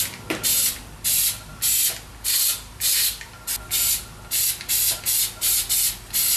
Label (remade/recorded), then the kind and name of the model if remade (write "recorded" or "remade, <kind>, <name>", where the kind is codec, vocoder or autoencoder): recorded